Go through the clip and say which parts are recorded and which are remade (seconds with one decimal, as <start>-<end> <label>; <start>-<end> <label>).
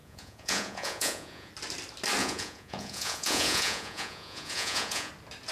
0.0-1.5 remade; 1.5-2.2 recorded; 2.2-5.1 remade; 5.1-5.5 recorded